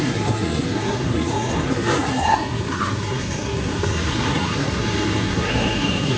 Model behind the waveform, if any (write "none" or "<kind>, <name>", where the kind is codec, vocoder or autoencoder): codec, SNAC